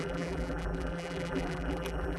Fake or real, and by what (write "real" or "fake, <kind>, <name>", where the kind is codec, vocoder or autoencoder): fake, vocoder, BigVGAN v2